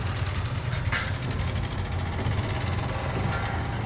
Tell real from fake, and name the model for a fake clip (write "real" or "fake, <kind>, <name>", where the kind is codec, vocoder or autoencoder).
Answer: real